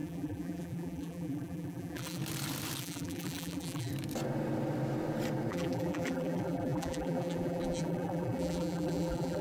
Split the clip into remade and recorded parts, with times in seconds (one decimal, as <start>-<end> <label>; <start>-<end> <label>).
0.0-2.2 remade; 2.2-2.8 recorded; 2.8-3.9 remade; 3.9-5.5 recorded; 5.5-9.4 remade